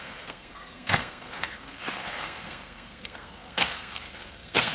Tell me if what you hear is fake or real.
fake